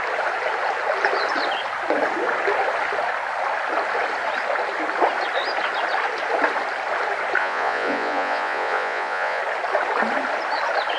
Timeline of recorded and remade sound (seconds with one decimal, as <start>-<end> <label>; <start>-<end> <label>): 0.0-7.4 recorded; 7.4-9.4 remade; 9.4-11.0 recorded